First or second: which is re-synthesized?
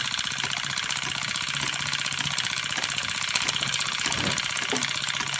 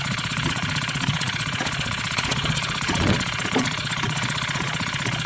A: second